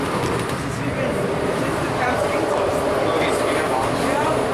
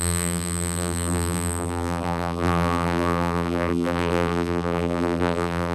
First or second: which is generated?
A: second